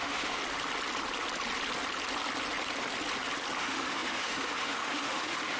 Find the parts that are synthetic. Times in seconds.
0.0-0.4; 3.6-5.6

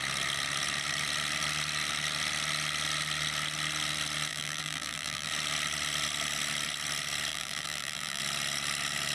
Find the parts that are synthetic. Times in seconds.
4.3-5.3; 7.3-8.2

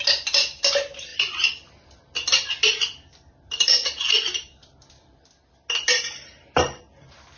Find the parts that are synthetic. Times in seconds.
none

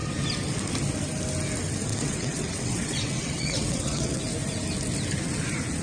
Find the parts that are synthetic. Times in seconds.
1.9-4.2

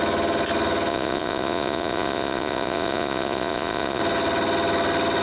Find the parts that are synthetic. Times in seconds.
0.9-4.0

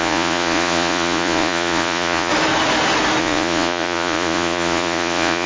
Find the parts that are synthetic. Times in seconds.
0.0-2.3; 3.2-5.5

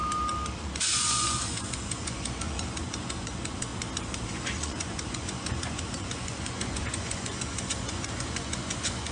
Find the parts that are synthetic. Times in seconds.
0.6-3.7; 4.3-9.1

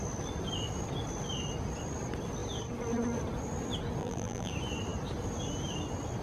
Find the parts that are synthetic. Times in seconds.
4.0-4.5